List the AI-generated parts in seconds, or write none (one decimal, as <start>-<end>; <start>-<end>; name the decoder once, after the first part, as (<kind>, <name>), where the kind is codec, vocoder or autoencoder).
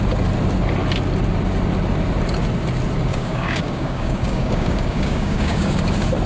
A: 3.1-5.8 (codec, DAC)